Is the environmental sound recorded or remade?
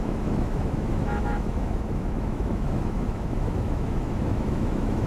remade